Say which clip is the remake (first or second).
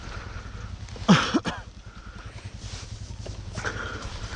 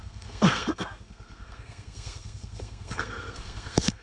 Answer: second